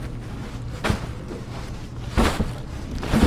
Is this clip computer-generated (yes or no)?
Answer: no